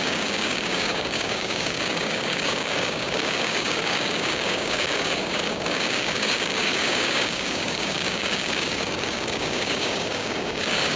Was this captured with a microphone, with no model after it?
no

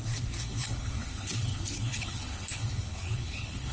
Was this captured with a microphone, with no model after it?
no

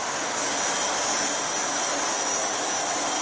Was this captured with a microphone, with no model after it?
yes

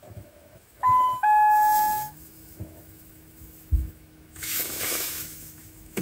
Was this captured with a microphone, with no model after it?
no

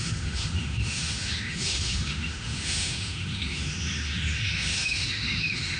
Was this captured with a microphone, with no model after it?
no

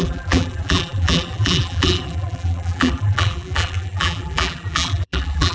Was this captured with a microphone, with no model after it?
no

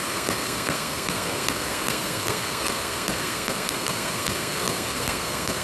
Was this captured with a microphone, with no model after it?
no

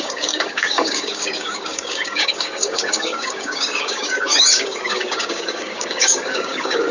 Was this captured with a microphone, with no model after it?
no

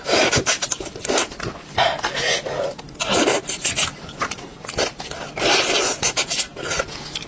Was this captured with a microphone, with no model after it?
yes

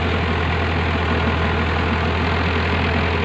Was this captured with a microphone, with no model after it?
yes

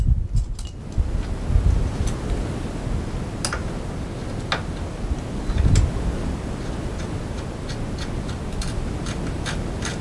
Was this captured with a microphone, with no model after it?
yes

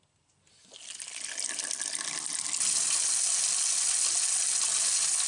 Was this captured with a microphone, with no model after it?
yes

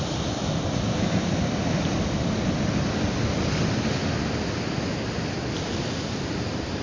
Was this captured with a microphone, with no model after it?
yes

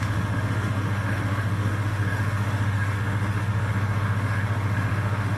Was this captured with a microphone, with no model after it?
no